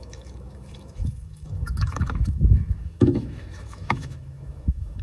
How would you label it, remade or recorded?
remade